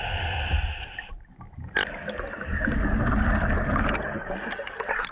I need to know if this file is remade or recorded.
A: recorded